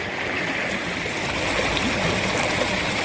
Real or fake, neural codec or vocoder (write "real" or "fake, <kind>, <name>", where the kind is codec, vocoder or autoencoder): real